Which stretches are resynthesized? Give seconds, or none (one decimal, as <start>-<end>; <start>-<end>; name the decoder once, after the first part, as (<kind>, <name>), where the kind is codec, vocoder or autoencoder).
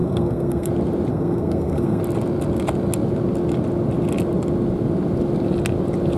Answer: 0.0-0.7 (codec, SNAC); 1.1-2.0